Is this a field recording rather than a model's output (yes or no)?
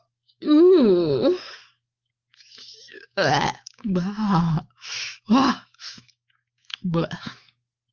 no